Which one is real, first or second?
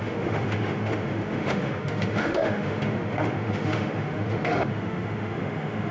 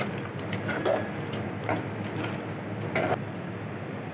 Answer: second